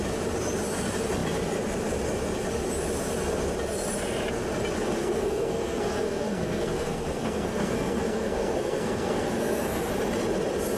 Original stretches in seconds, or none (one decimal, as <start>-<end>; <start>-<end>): 0.0-5.0; 9.9-10.8